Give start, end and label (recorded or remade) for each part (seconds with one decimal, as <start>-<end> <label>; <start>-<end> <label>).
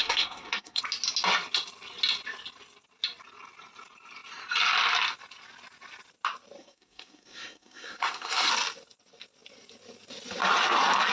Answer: 0.0-0.8 remade; 0.8-6.6 recorded; 6.6-8.5 remade; 8.5-11.1 recorded